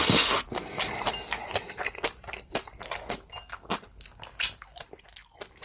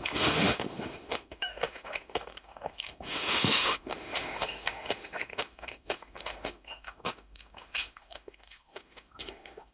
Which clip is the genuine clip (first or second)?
first